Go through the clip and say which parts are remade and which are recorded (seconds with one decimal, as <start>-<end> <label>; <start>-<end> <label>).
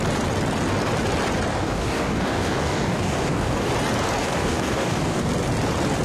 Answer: 0.0-1.5 recorded; 1.5-3.7 remade; 3.7-4.2 recorded; 4.2-5.3 remade; 5.3-6.0 recorded